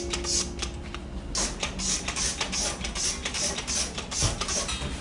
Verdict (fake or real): real